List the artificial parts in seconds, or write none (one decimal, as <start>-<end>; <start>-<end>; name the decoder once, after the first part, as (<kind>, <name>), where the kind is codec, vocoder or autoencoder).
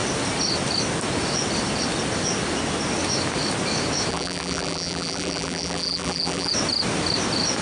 4.1-6.5 (vocoder, BigVGAN v2)